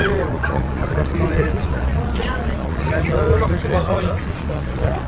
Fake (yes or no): yes